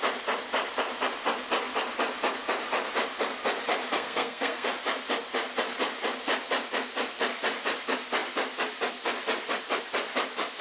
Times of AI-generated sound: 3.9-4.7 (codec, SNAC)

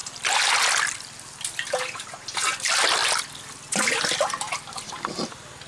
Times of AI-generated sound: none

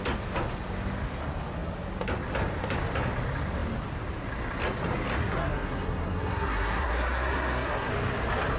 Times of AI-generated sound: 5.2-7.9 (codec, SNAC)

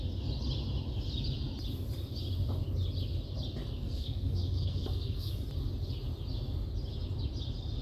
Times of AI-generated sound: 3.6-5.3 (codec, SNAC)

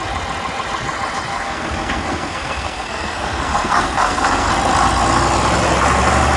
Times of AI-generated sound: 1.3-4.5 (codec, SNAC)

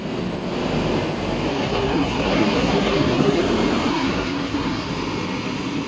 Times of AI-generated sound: 1.5-3.4 (codec, SNAC); 3.9-4.9